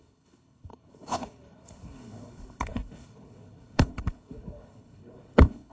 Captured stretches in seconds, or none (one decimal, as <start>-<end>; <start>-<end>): none